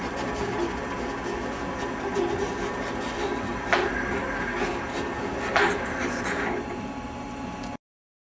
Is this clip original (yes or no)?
yes